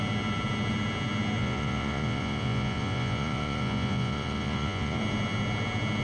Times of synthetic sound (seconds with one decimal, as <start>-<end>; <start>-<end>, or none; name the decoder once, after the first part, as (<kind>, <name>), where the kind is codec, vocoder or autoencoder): 1.4-5.0 (vocoder, Vocos)